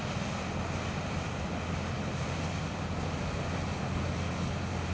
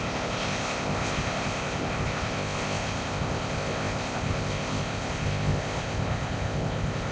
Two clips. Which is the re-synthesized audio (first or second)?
second